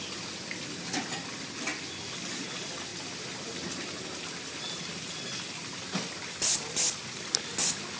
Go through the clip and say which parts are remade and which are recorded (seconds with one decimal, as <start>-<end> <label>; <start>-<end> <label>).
0.0-8.0 recorded